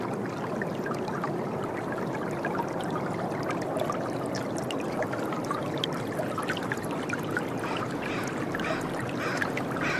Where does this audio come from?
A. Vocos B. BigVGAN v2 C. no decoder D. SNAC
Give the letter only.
C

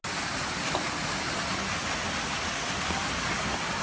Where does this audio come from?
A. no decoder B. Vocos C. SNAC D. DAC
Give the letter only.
A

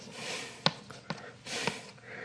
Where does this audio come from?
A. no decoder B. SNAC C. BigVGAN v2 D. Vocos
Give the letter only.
A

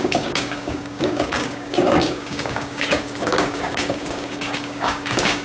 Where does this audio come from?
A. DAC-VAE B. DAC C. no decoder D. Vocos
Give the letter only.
B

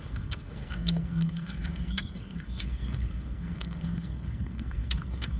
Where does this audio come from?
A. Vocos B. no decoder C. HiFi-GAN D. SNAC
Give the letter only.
D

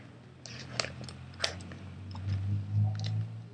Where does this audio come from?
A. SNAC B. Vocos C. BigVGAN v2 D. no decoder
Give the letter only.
D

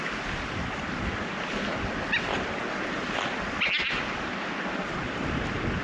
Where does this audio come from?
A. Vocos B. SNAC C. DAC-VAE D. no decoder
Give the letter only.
D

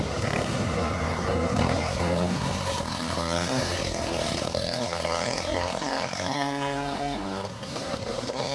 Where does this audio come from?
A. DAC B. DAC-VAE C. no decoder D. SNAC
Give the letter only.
D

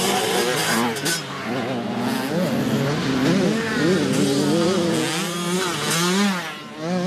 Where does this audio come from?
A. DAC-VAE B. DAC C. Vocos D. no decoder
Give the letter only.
D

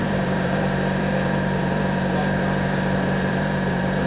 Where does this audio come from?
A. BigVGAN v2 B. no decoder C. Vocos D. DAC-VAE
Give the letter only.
A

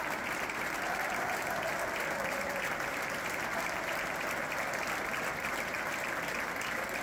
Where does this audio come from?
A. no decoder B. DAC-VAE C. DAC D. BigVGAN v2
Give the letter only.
A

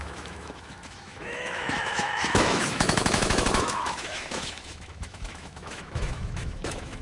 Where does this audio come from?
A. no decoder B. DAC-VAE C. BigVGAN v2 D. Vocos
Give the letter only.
B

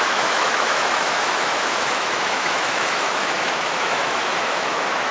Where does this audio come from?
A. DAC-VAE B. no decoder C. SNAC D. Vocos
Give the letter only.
A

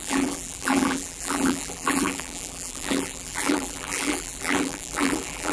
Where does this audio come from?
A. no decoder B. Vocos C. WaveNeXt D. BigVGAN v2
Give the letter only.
D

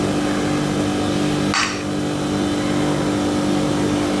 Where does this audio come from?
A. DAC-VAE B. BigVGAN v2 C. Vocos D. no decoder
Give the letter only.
D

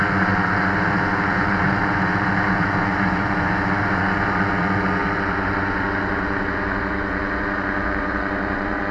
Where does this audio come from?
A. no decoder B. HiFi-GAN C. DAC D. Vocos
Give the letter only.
D